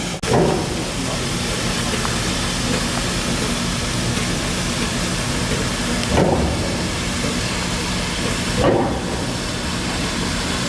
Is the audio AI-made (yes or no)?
no